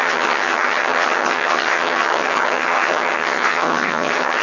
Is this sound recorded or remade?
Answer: remade